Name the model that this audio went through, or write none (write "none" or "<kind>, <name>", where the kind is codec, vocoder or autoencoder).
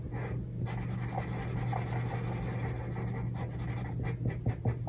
none